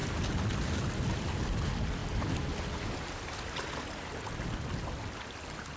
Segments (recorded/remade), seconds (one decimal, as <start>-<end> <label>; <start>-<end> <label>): 0.0-5.8 recorded